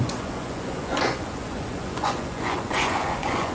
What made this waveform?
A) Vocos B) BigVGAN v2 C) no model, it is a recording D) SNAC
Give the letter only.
A